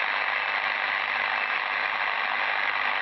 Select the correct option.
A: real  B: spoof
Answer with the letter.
A